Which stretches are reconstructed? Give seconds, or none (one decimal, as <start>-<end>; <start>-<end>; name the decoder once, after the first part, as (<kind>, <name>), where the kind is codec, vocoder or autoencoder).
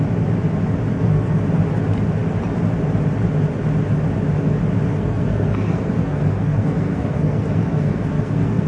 0.9-1.4 (codec, SNAC); 4.9-8.7